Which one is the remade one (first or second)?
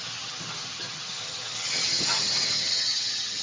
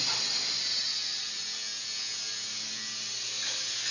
first